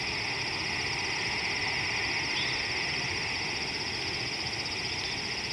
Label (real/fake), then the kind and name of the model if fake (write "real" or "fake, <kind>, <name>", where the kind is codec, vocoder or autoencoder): real